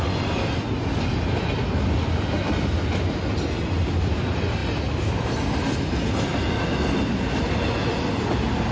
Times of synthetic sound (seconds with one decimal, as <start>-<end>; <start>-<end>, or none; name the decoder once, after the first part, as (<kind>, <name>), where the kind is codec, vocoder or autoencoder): 6.3-7.7 (vocoder, BigVGAN v2)